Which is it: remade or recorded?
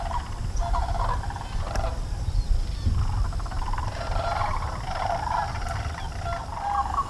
recorded